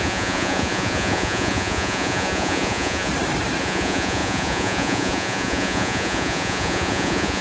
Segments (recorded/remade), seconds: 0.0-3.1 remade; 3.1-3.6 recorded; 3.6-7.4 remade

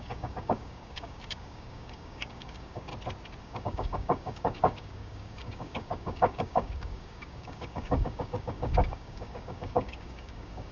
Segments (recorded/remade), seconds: 0.0-2.9 remade; 2.9-3.4 recorded; 3.4-10.7 remade

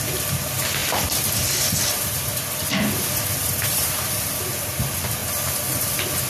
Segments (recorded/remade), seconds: 0.0-5.2 remade; 5.2-6.3 recorded

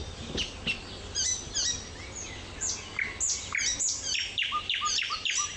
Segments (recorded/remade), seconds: 0.0-3.4 recorded; 3.4-5.6 remade